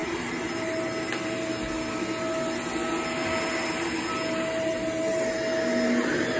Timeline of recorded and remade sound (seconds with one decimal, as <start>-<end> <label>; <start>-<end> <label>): 0.0-6.4 recorded